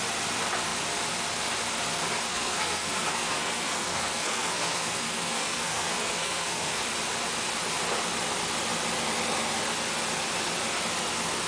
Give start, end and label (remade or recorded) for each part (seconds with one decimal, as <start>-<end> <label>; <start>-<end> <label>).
0.0-2.3 recorded; 2.3-6.8 remade; 6.8-11.5 recorded